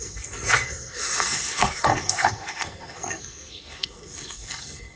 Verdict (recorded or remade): remade